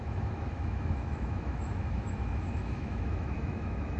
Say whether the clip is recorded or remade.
remade